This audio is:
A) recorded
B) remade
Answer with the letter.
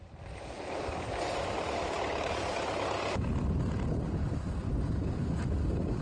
A